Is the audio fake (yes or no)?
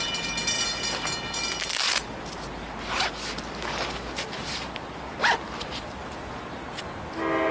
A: no